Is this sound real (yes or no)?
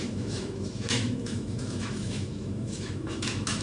no